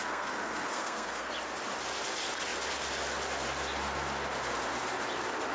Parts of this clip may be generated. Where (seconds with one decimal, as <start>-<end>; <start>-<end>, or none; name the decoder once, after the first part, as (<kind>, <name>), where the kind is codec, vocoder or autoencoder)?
0.0-1.3 (codec, SNAC)